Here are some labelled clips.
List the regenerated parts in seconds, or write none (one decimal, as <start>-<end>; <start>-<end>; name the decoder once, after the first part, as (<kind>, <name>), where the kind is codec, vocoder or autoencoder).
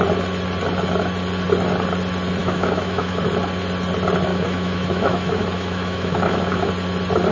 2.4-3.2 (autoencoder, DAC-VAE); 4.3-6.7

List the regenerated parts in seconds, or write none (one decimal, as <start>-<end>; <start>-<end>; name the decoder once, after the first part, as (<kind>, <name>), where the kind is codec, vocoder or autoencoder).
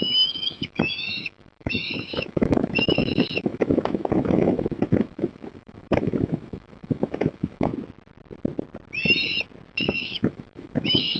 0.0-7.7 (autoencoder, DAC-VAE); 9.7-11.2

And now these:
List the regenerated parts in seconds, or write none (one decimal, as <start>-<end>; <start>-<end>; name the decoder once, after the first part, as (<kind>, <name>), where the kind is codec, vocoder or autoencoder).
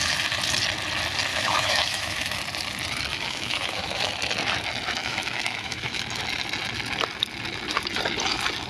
1.3-2.4 (autoencoder, DAC-VAE); 3.1-4.1; 5.0-6.0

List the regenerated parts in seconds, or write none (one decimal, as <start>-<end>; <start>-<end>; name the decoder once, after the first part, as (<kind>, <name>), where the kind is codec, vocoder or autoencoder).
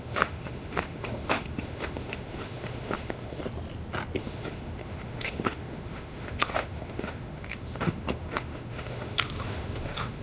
0.0-3.4 (autoencoder, DAC-VAE); 4.2-10.2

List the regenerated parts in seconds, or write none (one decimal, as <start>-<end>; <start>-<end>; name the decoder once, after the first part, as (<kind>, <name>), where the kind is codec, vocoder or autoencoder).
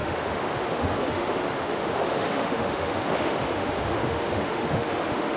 0.0-5.4 (autoencoder, DAC-VAE)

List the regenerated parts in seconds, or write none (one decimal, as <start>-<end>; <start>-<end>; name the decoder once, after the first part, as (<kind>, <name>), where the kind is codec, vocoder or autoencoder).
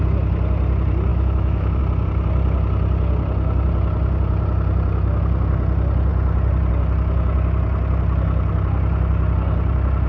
1.1-1.8 (autoencoder, DAC-VAE)